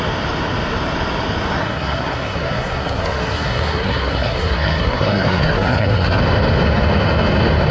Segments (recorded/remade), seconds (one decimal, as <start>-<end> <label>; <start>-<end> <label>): 0.0-1.6 recorded; 1.6-6.2 remade; 6.2-7.7 recorded